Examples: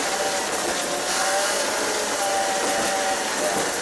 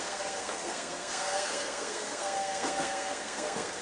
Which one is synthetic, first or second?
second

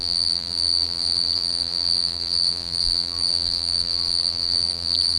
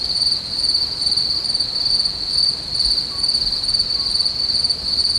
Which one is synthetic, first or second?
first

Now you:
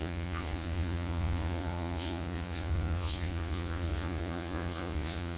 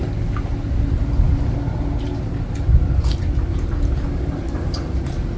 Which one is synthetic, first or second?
first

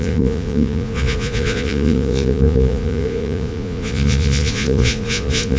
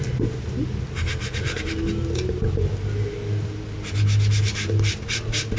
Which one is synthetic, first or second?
first